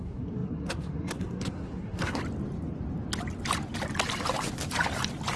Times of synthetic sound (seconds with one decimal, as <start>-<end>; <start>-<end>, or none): 0.0-2.2